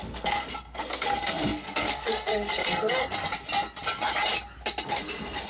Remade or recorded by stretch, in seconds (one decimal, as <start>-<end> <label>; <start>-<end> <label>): 0.0-3.0 remade; 3.0-4.9 recorded; 4.9-5.5 remade